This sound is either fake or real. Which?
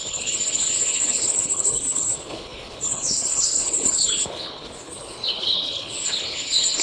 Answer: fake